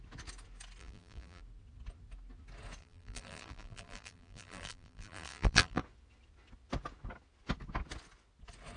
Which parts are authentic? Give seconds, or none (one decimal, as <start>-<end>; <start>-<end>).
0.0-0.8; 1.4-2.8; 5.8-8.8

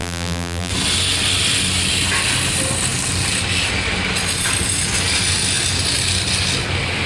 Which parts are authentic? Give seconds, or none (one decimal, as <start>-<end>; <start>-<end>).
0.7-7.1

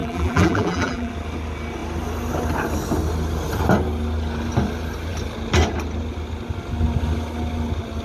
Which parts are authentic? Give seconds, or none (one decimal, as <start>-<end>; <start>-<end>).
1.1-8.0

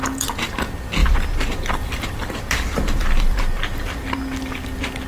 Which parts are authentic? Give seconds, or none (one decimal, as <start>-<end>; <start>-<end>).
0.0-1.0; 4.1-5.1

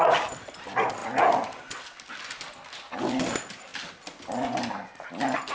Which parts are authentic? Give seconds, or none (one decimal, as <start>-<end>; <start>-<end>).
0.0-5.5

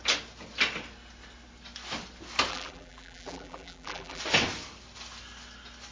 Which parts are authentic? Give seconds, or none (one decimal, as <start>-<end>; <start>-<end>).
0.0-2.5; 4.2-5.9